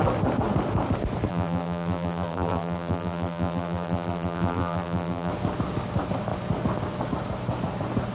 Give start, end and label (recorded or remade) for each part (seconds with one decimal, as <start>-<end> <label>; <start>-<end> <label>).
0.0-1.3 recorded; 1.3-5.3 remade; 5.3-8.1 recorded